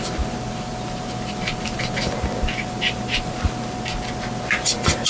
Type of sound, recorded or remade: recorded